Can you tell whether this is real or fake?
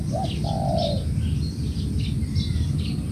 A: real